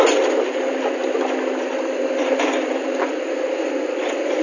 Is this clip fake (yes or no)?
no